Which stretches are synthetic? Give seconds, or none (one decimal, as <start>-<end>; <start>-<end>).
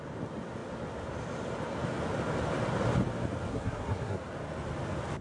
3.5-4.2